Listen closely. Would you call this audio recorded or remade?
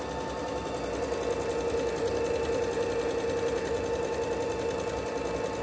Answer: recorded